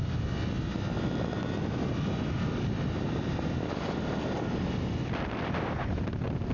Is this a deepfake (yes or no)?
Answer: no